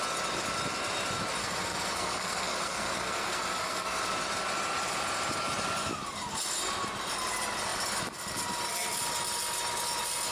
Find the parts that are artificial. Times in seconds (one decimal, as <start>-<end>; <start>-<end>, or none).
1.4-4.0